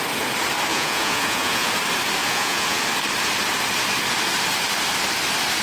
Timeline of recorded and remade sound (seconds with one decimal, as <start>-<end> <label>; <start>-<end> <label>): 0.0-0.7 recorded; 0.7-1.7 remade; 1.7-2.2 recorded; 2.2-2.8 remade; 2.8-5.6 recorded